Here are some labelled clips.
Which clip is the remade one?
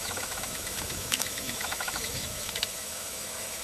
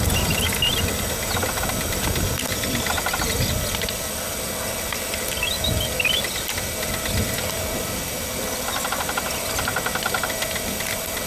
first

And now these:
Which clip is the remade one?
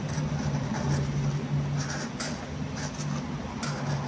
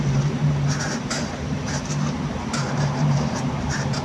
second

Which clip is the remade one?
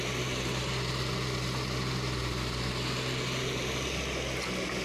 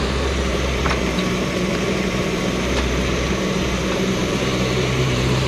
second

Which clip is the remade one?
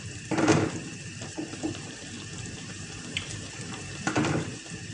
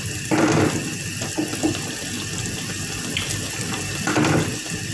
first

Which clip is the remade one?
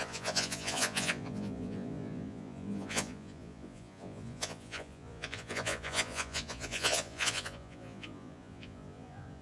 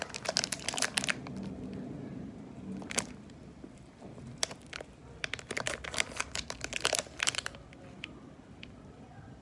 first